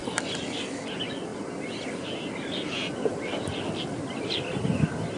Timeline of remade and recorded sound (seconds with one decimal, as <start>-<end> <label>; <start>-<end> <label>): 0.0-0.5 recorded; 0.5-1.3 remade; 1.3-4.1 recorded; 4.1-5.2 remade